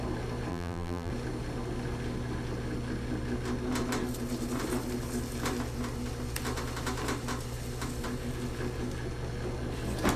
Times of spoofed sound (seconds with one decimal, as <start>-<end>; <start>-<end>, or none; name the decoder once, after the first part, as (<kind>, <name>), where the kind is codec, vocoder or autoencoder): 0.5-1.1 (vocoder, BigVGAN v2)

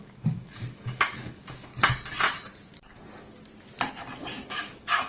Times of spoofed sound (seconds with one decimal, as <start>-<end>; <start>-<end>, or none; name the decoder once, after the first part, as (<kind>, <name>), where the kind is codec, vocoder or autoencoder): 0.0-1.7 (autoencoder, DAC-VAE); 4.5-5.1